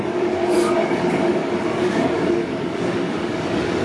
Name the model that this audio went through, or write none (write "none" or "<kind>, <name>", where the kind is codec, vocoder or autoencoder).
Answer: codec, DAC